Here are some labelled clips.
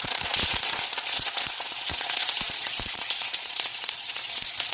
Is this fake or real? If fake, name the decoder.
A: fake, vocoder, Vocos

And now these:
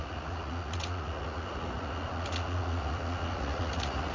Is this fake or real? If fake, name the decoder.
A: fake, vocoder, Vocos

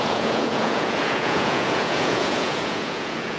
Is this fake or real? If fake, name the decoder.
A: fake, vocoder, Vocos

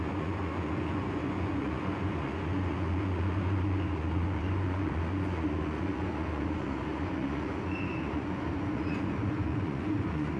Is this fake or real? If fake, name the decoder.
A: fake, vocoder, Vocos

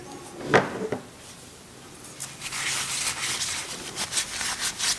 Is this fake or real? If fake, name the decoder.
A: real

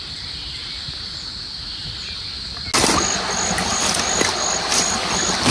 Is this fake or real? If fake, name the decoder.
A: real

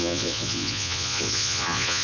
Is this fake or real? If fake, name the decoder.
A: fake, vocoder, Vocos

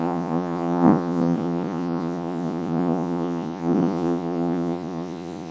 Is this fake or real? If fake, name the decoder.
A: fake, vocoder, Vocos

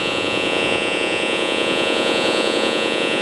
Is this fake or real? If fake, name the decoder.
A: fake, vocoder, Vocos